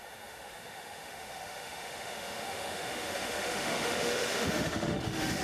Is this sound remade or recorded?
remade